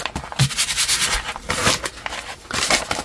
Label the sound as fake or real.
real